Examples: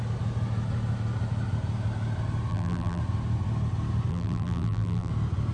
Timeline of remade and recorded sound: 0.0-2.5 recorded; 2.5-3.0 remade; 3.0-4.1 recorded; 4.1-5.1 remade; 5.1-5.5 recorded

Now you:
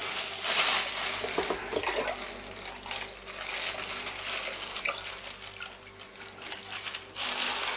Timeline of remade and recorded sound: 0.0-7.8 recorded

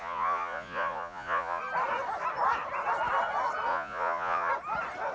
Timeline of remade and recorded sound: 0.0-1.6 remade; 1.6-3.7 recorded; 3.7-4.5 remade; 4.5-5.1 recorded

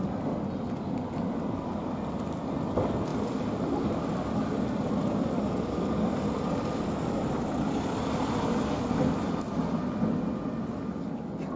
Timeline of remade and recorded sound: 0.0-11.6 recorded